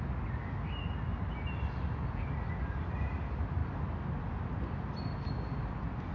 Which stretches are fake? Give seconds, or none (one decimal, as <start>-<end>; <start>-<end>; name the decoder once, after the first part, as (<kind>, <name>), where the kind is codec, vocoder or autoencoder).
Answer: 1.1-1.8 (vocoder, BigVGAN v2)

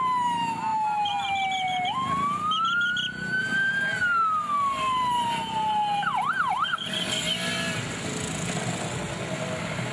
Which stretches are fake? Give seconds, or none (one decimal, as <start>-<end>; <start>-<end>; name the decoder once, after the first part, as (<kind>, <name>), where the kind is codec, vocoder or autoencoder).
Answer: none

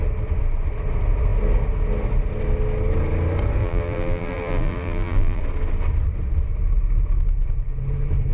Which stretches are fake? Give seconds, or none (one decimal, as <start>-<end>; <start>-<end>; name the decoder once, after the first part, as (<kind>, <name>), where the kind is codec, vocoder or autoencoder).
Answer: 3.6-5.4 (vocoder, BigVGAN v2)

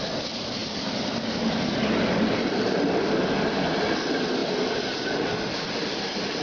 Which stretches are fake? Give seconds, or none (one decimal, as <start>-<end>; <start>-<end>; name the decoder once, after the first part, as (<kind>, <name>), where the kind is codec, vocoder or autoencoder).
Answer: 0.6-1.7 (vocoder, BigVGAN v2); 4.4-5.1

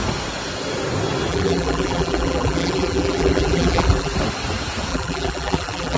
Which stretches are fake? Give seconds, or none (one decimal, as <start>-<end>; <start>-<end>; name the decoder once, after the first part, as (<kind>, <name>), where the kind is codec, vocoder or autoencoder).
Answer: 1.3-4.1 (vocoder, BigVGAN v2); 4.9-6.0

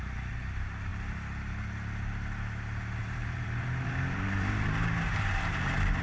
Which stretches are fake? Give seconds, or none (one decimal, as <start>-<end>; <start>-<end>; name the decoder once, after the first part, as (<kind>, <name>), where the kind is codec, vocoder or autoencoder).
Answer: 0.0-0.9 (vocoder, BigVGAN v2); 3.0-6.0